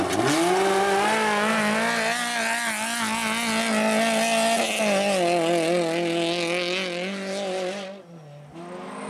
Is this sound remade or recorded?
recorded